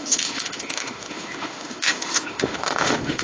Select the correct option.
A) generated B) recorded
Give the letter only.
A